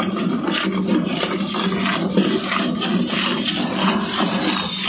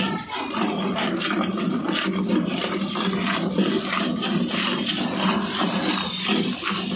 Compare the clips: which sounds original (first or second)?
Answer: first